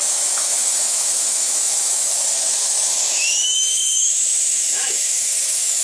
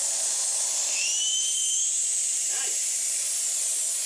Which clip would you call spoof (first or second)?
first